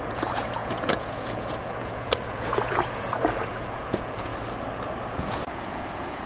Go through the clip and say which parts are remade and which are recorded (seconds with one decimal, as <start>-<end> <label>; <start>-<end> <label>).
0.0-4.3 remade; 4.3-5.1 recorded; 5.1-6.3 remade